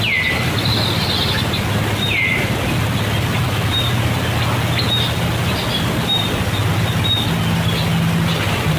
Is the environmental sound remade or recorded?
recorded